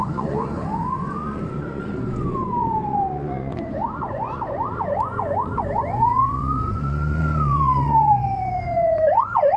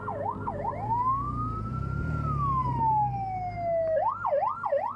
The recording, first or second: second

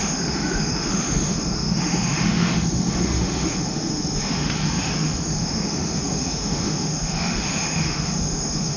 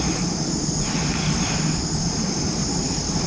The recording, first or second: second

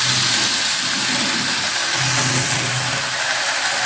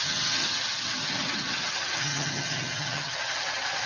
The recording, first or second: first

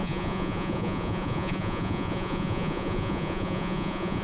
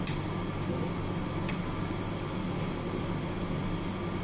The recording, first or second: second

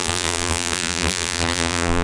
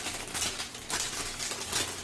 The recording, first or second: second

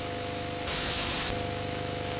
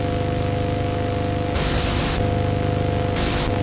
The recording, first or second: second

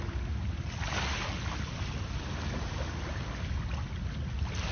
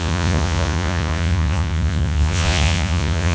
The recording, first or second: first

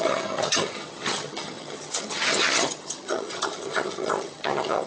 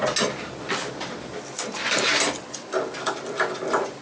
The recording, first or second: second